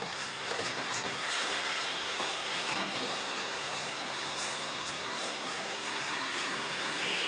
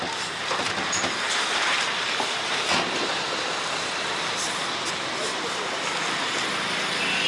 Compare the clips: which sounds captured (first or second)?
second